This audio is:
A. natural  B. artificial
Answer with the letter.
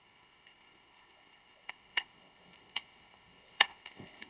B